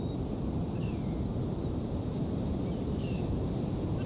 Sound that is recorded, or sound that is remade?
remade